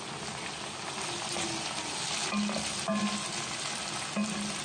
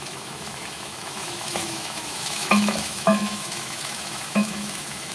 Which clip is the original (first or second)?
first